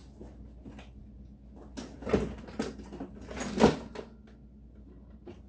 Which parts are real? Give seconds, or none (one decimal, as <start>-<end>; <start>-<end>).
0.0-5.5

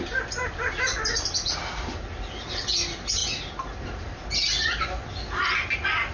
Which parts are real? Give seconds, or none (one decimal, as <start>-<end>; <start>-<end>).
0.0-4.4; 5.0-6.1

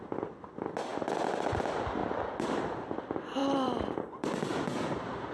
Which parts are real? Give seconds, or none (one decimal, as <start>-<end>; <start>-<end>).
0.0-2.0; 3.0-3.4; 4.3-5.3

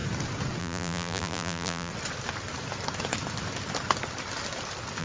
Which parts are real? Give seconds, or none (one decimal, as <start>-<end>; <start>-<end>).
0.0-0.6; 1.9-5.0

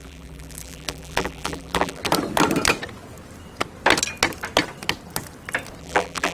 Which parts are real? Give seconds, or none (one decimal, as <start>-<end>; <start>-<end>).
2.0-5.8